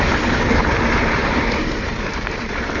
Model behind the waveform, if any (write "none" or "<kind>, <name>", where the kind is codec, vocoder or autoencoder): vocoder, BigVGAN v2